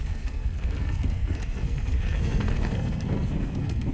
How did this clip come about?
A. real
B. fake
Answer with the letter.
B